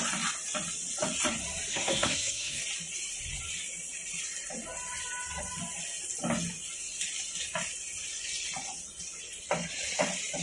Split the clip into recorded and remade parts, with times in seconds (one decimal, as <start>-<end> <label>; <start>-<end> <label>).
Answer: 0.0-1.7 recorded; 1.7-2.6 remade; 2.6-10.4 recorded